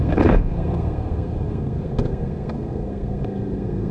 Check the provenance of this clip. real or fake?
fake